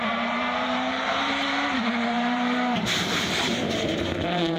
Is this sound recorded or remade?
remade